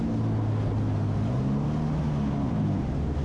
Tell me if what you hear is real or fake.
real